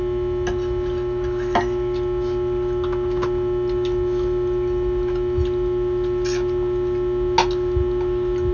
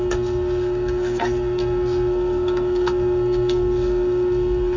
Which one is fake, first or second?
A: second